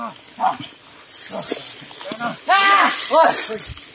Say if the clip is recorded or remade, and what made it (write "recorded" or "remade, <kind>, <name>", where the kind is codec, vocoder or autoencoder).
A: recorded